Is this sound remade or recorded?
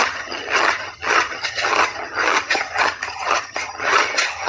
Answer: remade